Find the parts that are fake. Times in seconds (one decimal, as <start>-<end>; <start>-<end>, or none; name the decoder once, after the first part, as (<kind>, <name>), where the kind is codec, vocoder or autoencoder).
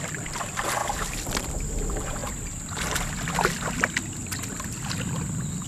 0.0-0.8 (vocoder, BigVGAN v2); 1.4-2.2